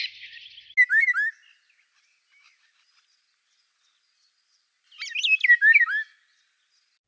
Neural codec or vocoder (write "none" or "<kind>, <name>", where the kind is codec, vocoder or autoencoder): none